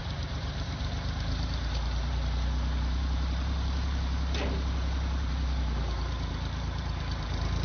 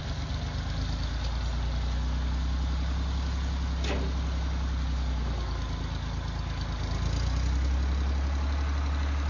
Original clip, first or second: second